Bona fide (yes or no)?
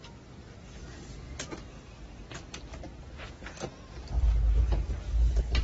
yes